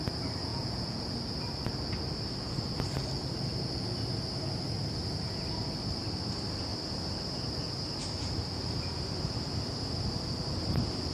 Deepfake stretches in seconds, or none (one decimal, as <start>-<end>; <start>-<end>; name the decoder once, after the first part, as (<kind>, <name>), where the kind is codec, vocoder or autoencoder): 0.5-1.0 (vocoder, Vocos)